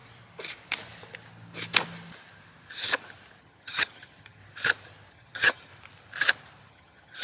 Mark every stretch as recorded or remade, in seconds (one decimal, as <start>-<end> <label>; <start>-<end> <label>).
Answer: 0.0-3.4 recorded; 3.4-4.4 remade; 4.4-5.1 recorded; 5.1-5.7 remade; 5.7-6.7 recorded; 6.7-7.2 remade